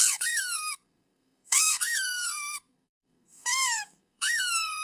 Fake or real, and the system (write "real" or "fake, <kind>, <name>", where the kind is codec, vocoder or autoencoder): fake, codec, SNAC